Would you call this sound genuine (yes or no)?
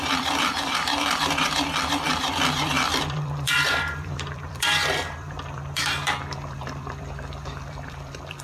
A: no